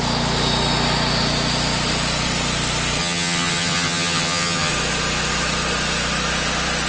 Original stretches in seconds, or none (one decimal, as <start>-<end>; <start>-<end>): 0.0-3.0; 4.7-6.9